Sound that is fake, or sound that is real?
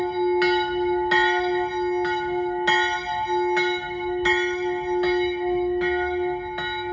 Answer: real